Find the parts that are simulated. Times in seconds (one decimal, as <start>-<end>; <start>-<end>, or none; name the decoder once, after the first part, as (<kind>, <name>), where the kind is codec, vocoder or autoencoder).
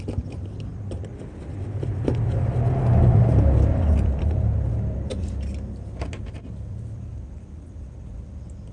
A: none